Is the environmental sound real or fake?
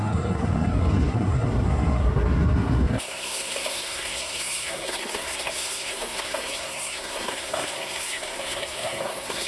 fake